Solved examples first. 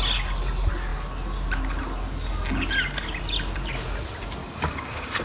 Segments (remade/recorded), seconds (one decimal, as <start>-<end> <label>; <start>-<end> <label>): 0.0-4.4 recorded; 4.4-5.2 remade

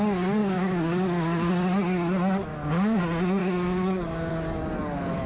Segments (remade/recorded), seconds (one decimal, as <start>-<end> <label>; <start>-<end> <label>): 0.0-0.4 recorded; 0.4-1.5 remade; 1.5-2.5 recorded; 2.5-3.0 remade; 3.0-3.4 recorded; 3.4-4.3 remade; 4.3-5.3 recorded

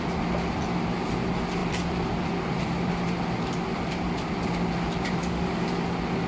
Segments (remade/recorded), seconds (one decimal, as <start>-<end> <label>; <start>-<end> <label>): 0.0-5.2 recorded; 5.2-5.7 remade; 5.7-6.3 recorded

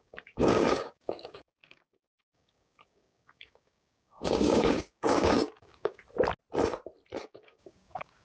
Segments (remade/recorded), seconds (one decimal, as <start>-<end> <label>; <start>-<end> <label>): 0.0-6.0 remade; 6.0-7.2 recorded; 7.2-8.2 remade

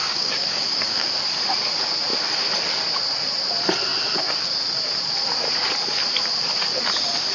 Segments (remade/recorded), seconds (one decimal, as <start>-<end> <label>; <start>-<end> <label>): 0.0-1.1 remade; 1.1-7.3 recorded

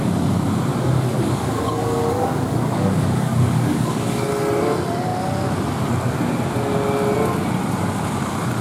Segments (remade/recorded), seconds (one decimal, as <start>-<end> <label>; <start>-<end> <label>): 0.0-0.7 recorded; 0.7-4.3 remade; 4.3-8.6 recorded

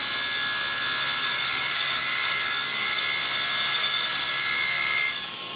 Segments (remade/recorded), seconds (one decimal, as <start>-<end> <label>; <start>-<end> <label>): 0.0-1.2 recorded; 1.2-3.0 remade; 3.0-3.7 recorded; 3.7-5.6 remade